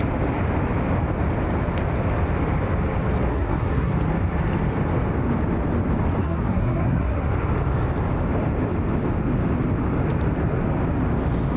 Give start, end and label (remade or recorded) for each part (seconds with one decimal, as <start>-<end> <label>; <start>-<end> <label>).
0.0-3.3 recorded; 3.3-3.9 remade; 3.9-6.2 recorded; 6.2-7.3 remade; 7.3-11.6 recorded